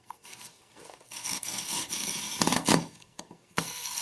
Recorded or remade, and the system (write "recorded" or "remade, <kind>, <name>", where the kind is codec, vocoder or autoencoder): remade, codec, SNAC